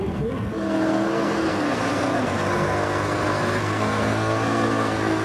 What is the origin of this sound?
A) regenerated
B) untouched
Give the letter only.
A